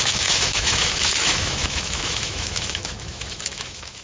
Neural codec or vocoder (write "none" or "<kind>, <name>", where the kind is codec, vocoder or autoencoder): autoencoder, DAC-VAE